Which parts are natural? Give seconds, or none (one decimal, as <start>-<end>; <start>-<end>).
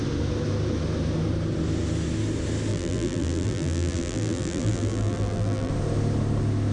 0.0-2.7; 5.7-6.7